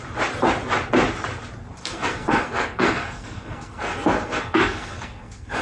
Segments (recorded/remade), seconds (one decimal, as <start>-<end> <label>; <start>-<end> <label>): 0.0-1.8 recorded; 1.8-5.6 remade

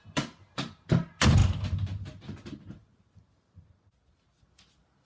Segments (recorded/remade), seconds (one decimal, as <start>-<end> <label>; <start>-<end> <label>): 0.0-5.0 recorded

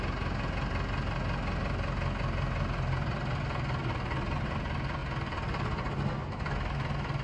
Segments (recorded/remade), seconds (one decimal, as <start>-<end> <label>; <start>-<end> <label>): 0.0-7.2 recorded

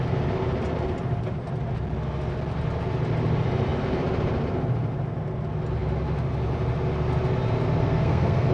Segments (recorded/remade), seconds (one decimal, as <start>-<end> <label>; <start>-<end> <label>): 0.0-7.8 recorded; 7.8-8.5 remade

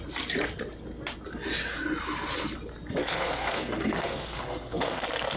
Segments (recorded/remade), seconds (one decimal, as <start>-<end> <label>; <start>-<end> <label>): 0.0-3.0 recorded; 3.0-5.0 remade; 5.0-5.4 recorded

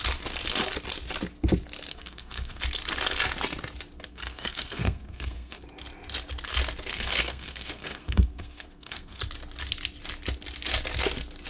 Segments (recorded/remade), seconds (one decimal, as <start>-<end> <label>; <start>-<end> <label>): 0.0-1.9 recorded; 1.9-2.6 remade; 2.6-4.1 recorded; 4.1-5.6 remade; 5.6-6.9 recorded; 6.9-9.2 remade; 9.2-11.5 recorded

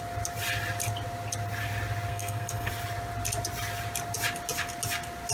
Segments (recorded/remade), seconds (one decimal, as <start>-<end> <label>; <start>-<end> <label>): 0.0-2.1 recorded; 2.1-2.7 remade; 2.7-5.3 recorded

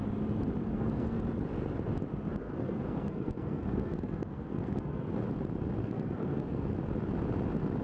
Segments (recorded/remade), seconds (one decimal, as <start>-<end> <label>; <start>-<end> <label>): 0.0-0.6 recorded; 0.6-1.2 remade; 1.2-2.3 recorded; 2.3-5.1 remade; 5.1-5.8 recorded; 5.8-6.7 remade; 6.7-7.8 recorded